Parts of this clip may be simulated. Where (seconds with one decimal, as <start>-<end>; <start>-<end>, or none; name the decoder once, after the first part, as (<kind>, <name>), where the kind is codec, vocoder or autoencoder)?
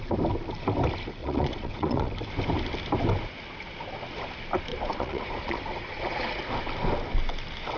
1.2-2.1 (vocoder, Vocos); 4.7-6.4